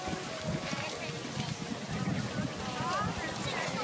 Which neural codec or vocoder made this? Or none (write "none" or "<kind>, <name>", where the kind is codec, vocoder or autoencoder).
none